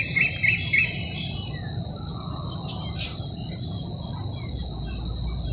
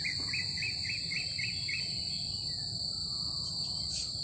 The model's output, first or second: second